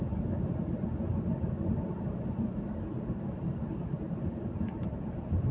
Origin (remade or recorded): recorded